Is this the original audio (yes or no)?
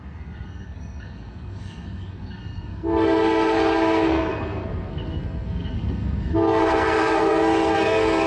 no